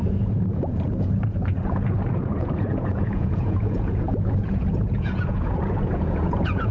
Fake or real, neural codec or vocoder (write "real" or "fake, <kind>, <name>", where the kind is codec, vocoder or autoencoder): fake, vocoder, Vocos